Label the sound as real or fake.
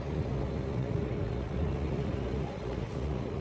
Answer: fake